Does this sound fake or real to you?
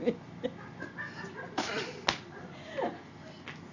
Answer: real